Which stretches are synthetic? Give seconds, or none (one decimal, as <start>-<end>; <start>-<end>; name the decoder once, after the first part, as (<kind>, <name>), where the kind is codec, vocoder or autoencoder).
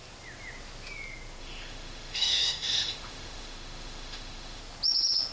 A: 1.4-4.6 (autoencoder, DAC-VAE)